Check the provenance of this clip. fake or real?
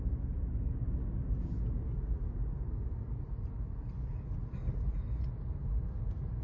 real